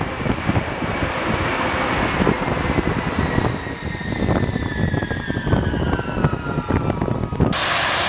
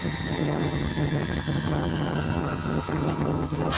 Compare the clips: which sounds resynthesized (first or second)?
second